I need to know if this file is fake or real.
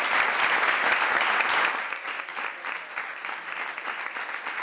real